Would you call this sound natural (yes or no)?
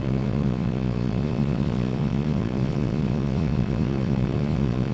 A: no